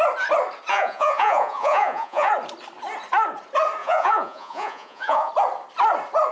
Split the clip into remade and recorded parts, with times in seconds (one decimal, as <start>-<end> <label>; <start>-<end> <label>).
0.0-0.7 recorded; 0.7-2.3 remade; 2.3-3.8 recorded; 3.8-5.3 remade; 5.3-6.3 recorded